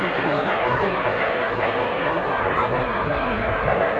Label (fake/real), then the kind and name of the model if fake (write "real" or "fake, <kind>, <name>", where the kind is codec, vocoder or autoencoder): fake, codec, SNAC